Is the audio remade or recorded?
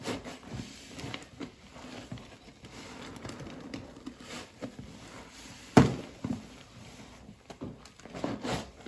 remade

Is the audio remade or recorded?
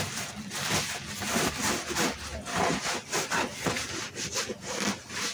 recorded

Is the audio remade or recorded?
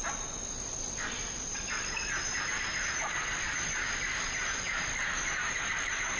recorded